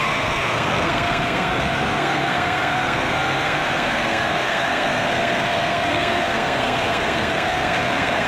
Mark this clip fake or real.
fake